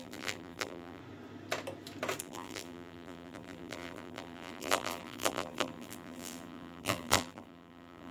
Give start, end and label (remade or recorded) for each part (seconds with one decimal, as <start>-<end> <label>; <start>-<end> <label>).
0.0-1.0 remade; 1.0-2.2 recorded; 2.2-8.1 remade